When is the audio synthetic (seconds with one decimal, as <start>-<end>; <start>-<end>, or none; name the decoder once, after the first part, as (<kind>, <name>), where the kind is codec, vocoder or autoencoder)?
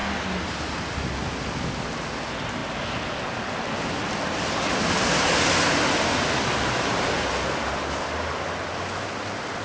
none